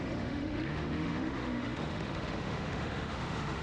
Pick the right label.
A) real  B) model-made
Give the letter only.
B